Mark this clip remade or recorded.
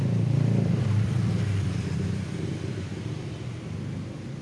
remade